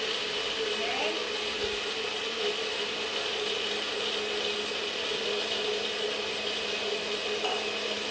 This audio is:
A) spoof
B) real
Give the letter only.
B